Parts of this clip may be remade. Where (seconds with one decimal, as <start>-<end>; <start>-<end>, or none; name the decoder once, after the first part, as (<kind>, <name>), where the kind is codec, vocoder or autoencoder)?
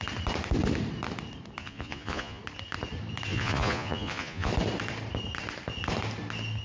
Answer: 1.6-2.4 (vocoder, Vocos); 3.3-4.5